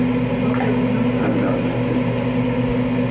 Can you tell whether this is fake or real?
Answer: real